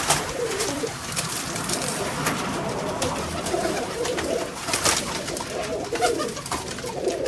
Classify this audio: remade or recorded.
remade